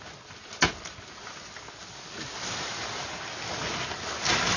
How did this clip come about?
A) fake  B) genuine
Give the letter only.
B